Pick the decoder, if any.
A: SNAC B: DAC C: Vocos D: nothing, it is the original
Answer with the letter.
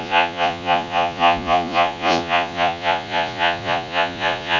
C